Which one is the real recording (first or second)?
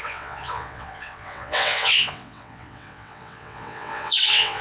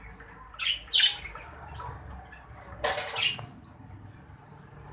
second